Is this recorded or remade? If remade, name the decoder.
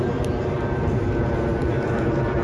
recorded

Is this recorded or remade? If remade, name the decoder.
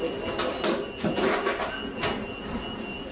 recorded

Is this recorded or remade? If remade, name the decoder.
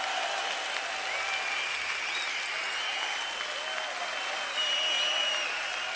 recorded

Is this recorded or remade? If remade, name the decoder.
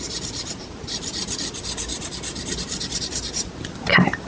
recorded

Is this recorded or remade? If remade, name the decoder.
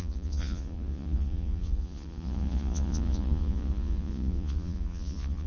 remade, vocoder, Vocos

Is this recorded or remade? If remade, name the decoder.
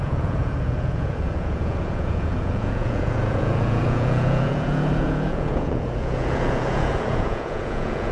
remade, vocoder, Vocos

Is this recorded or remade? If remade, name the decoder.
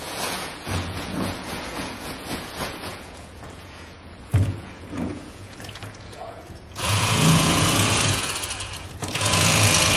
remade, vocoder, Vocos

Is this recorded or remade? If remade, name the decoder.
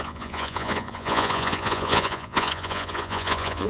remade, vocoder, Vocos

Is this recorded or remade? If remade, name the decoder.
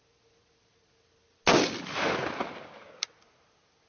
recorded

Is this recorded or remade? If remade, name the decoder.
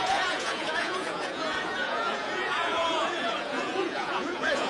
remade, vocoder, Vocos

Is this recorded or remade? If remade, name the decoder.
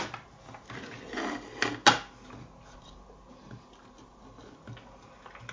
recorded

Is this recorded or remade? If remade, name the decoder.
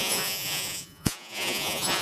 remade, vocoder, Vocos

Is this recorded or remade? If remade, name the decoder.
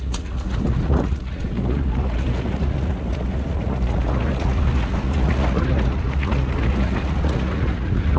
remade, vocoder, Vocos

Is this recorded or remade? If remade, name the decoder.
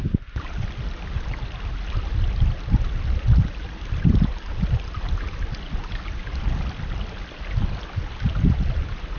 recorded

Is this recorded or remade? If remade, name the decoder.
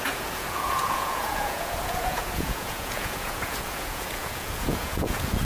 remade, vocoder, Vocos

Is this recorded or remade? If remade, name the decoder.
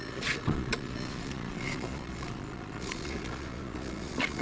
remade, vocoder, Vocos